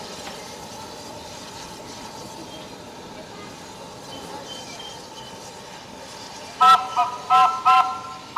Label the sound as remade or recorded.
recorded